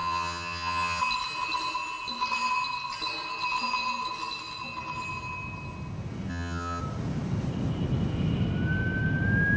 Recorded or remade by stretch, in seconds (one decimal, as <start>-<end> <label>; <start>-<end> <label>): 0.0-1.0 remade; 1.0-6.3 recorded; 6.3-6.8 remade; 6.8-9.6 recorded